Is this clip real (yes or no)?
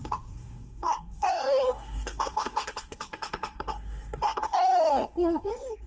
no